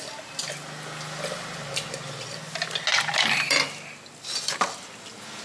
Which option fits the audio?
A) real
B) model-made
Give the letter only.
A